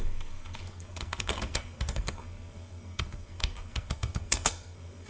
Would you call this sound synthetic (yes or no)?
yes